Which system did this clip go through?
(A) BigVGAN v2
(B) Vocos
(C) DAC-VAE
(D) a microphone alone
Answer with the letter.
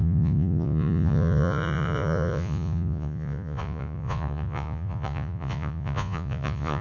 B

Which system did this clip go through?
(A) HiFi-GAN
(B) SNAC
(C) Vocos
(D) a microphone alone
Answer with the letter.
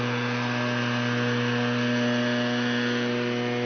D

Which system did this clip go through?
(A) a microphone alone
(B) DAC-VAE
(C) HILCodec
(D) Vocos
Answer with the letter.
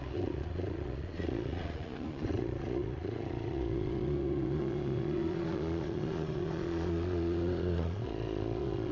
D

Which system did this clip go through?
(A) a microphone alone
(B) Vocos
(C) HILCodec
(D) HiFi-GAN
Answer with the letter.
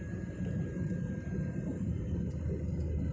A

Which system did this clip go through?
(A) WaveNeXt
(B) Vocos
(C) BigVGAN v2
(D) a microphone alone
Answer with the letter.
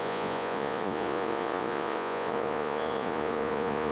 B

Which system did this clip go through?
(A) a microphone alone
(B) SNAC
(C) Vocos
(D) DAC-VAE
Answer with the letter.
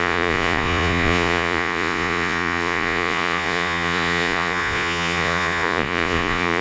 C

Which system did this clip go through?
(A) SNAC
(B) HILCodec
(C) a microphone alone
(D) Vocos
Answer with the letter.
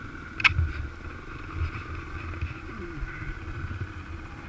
C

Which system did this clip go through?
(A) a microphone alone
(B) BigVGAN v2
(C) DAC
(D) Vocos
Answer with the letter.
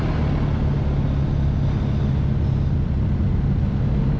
A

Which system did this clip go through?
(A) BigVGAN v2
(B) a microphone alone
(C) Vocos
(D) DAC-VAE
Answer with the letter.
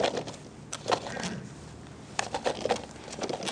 B